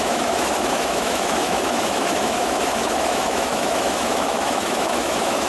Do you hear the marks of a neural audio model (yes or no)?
yes